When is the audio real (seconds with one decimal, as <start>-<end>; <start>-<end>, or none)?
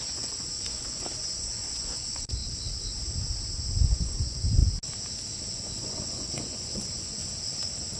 2.4-3.8; 4.6-5.5; 7.2-8.0